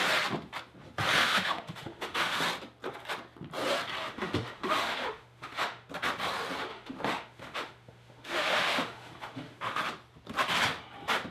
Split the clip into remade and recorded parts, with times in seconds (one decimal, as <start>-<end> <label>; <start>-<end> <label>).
0.0-1.2 recorded; 1.2-2.4 remade; 2.4-4.0 recorded; 4.0-5.9 remade; 5.9-6.7 recorded; 6.7-9.8 remade; 9.8-11.3 recorded